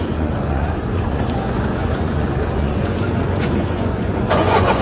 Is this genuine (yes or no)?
no